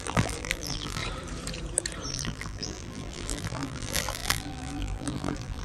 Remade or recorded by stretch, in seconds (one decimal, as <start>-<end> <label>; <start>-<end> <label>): 0.0-1.0 remade; 1.0-2.1 recorded; 2.1-5.6 remade